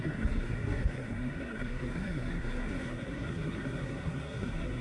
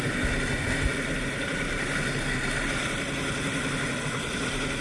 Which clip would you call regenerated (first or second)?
first